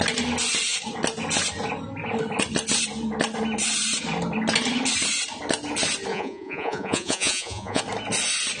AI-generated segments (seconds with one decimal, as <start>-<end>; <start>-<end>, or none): 6.1-7.8